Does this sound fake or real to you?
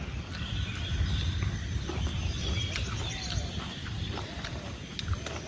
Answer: real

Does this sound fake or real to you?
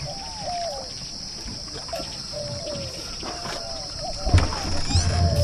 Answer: real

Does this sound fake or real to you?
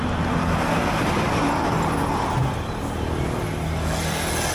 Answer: real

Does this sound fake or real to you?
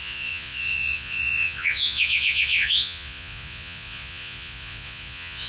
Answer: fake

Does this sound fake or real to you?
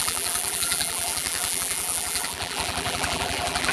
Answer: fake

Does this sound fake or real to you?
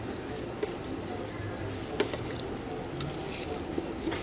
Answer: real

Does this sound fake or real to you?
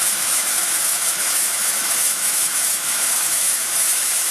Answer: fake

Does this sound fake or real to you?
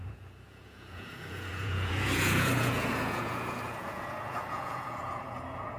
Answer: fake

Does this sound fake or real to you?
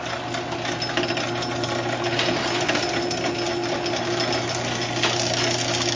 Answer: real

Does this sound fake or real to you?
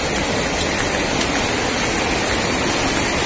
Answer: real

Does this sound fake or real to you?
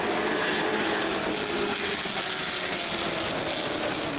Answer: real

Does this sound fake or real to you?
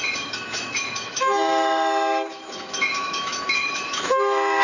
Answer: fake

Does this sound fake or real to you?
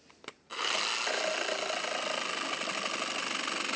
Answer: real